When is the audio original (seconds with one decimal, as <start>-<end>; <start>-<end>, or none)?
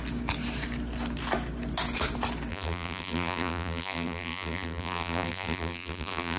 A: 0.0-2.5